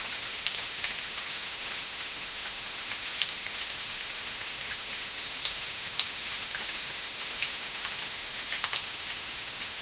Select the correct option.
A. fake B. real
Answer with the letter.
A